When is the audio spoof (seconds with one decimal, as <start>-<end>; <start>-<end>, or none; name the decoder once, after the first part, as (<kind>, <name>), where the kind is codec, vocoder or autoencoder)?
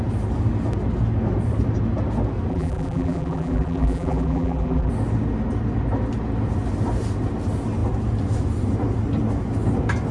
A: 2.5-4.9 (vocoder, BigVGAN v2)